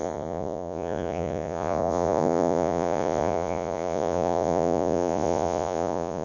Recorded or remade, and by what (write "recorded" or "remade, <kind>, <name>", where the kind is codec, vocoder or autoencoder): remade, vocoder, Vocos